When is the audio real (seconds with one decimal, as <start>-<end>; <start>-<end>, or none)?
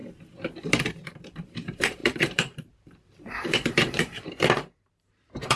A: 0.0-0.9